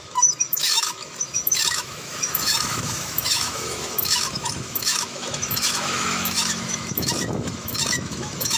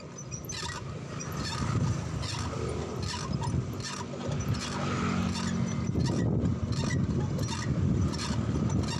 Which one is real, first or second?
second